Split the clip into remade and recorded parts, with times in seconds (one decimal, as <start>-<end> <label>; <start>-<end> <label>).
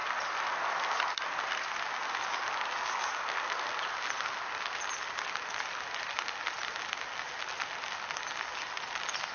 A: 0.0-9.3 recorded